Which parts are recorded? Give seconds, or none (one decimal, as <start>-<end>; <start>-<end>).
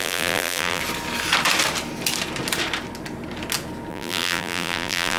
0.8-3.9